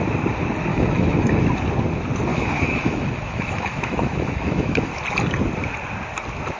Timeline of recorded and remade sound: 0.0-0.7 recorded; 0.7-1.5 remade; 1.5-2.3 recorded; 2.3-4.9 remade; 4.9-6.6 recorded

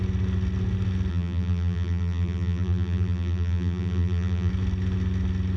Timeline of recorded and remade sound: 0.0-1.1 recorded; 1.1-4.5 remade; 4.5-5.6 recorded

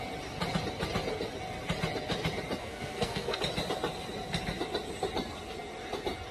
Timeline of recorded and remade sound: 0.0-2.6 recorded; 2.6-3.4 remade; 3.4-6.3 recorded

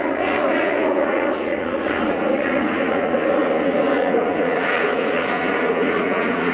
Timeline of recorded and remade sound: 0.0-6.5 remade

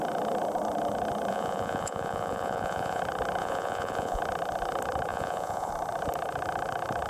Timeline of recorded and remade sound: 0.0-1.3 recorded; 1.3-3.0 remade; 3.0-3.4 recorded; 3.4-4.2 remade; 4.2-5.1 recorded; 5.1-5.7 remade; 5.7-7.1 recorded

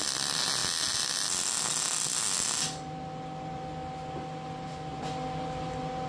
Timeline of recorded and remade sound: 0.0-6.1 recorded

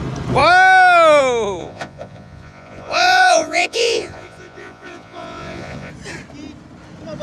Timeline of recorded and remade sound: 0.0-1.6 recorded; 1.6-5.9 remade; 5.9-7.2 recorded